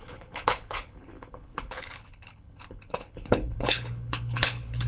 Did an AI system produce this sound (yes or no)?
yes